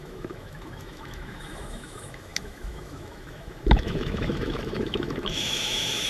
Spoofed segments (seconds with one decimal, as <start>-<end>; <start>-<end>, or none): 0.0-6.1